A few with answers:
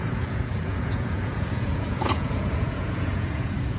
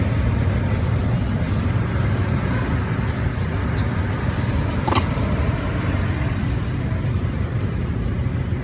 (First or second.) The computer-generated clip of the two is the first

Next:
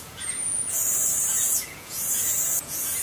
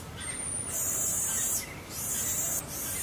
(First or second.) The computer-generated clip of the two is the first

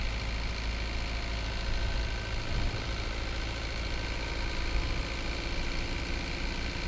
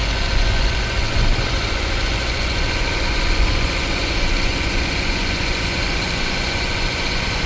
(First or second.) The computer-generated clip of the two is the second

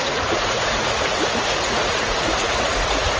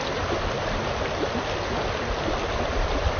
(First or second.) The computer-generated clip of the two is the first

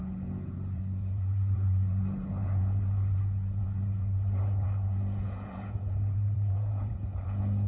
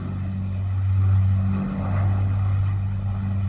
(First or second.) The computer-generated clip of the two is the first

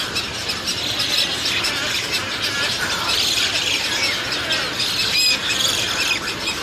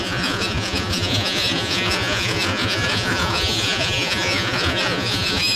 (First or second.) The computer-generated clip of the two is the second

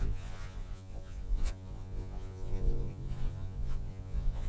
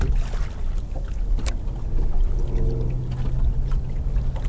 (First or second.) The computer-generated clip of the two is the first